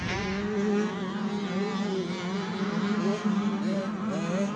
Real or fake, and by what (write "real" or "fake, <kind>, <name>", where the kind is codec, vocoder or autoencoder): real